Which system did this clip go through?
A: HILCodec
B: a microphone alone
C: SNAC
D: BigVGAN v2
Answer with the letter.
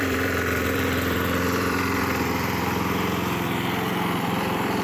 D